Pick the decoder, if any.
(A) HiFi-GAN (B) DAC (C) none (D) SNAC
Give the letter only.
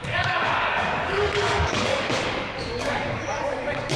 B